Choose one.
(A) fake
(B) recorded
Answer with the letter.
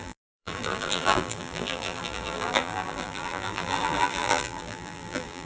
A